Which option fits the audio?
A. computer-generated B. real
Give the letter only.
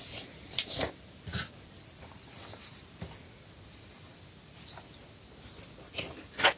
B